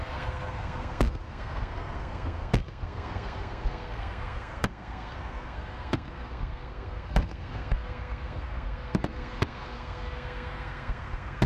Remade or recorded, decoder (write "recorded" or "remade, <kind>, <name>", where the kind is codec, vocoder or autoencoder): remade, codec, SNAC